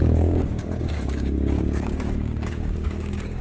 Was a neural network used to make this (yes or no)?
yes